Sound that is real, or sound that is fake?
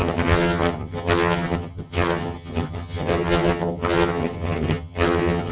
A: fake